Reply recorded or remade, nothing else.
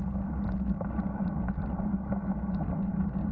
recorded